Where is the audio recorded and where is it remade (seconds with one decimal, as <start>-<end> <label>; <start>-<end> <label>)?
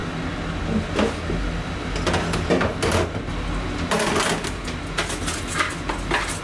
0.0-6.4 recorded